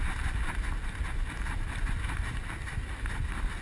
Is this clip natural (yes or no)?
yes